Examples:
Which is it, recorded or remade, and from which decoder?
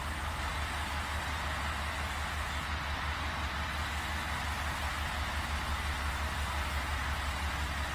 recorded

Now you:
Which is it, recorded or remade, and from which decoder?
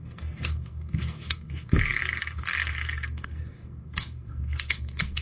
remade, codec, SNAC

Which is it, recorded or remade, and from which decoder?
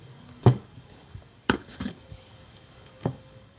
remade, codec, DAC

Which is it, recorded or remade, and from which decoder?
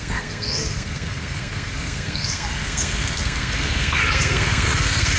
remade, codec, SNAC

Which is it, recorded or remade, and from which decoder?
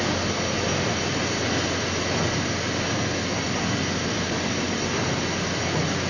recorded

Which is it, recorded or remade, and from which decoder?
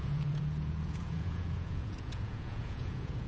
remade, vocoder, Vocos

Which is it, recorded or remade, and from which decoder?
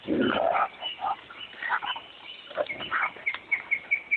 recorded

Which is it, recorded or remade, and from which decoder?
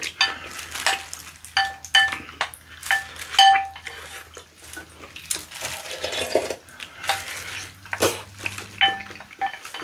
recorded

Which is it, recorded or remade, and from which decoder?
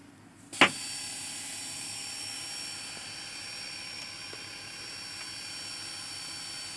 recorded